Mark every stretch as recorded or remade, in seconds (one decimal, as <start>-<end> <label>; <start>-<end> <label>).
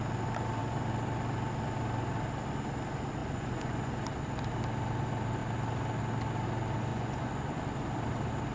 0.0-3.2 recorded; 3.2-3.9 remade; 3.9-6.9 recorded; 6.9-7.6 remade; 7.6-8.5 recorded